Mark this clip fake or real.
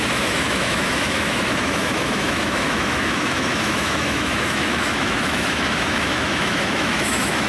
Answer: fake